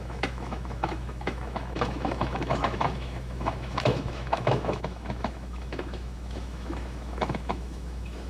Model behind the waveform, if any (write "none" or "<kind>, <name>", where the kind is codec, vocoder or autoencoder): autoencoder, DAC-VAE